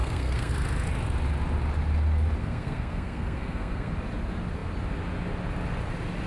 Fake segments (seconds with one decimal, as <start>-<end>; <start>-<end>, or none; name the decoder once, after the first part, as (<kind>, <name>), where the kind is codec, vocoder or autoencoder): 0.0-0.5 (codec, SNAC); 2.4-3.9

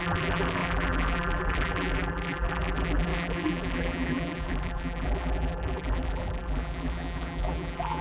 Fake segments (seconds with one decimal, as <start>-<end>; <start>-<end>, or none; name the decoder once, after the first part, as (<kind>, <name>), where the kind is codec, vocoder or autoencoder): 0.0-8.0 (vocoder, BigVGAN v2)

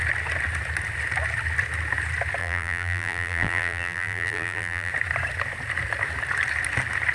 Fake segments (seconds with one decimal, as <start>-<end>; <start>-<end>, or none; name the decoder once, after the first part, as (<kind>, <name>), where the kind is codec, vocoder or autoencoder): 2.4-4.9 (vocoder, BigVGAN v2)

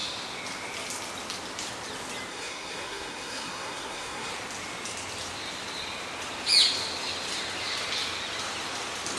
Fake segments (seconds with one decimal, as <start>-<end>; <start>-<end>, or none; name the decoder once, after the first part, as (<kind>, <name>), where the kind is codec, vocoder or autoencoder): 2.3-4.3 (codec, SNAC)

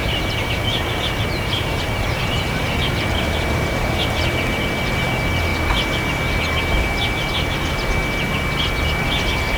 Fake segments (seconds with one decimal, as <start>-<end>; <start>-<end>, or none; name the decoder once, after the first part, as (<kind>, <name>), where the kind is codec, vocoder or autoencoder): 0.0-4.2 (vocoder, BigVGAN v2)

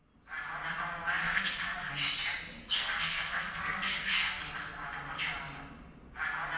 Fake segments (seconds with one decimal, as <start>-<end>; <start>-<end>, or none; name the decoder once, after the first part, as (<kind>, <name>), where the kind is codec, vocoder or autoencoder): 1.2-1.9 (codec, SNAC); 2.6-4.4